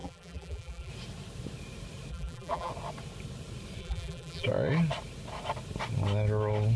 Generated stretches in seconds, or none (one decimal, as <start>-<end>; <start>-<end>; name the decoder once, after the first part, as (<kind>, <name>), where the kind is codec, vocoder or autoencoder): 0.0-0.9 (vocoder, BigVGAN v2); 2.1-2.7; 3.8-4.5